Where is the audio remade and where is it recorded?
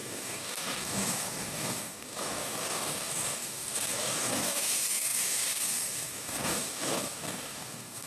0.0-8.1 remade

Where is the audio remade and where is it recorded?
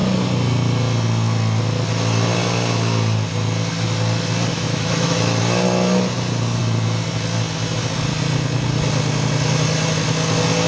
0.0-4.5 recorded; 4.5-5.4 remade; 5.4-10.7 recorded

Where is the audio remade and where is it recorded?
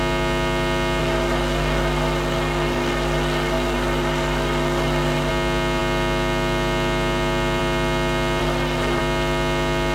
0.0-1.0 recorded; 1.0-5.3 remade; 5.3-8.4 recorded; 8.4-9.0 remade; 9.0-9.9 recorded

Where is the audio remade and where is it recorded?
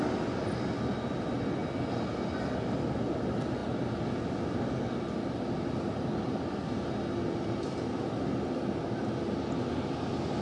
0.0-10.4 recorded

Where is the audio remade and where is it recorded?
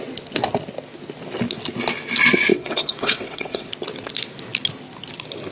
0.0-2.5 recorded; 2.5-3.7 remade; 3.7-5.5 recorded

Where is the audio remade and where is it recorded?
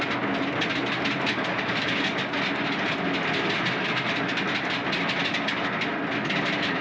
0.0-6.8 recorded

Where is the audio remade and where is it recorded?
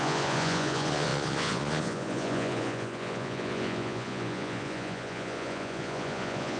0.0-6.6 remade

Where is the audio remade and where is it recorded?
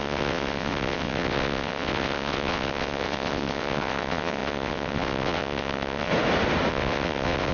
0.0-6.1 remade; 6.1-6.7 recorded; 6.7-7.5 remade